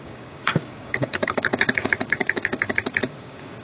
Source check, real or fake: fake